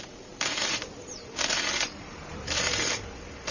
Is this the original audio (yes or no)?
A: no